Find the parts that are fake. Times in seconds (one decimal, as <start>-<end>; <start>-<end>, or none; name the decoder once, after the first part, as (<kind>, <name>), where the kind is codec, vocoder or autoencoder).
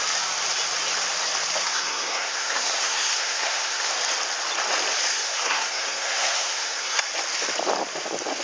1.6-3.9 (codec, SNAC); 5.1-7.1